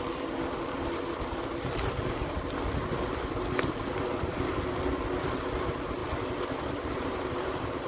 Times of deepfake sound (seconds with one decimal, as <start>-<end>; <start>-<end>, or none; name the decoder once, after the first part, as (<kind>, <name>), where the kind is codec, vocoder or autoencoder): 4.1-4.6 (vocoder, BigVGAN v2); 6.0-7.9